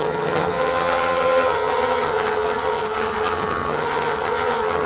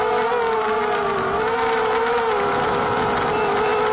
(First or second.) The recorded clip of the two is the second